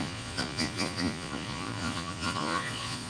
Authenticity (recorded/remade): remade